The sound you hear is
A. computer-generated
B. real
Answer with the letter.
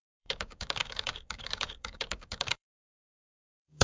A